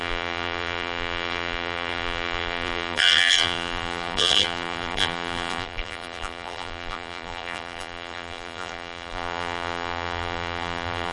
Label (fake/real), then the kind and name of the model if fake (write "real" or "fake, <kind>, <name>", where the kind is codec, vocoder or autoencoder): fake, vocoder, BigVGAN v2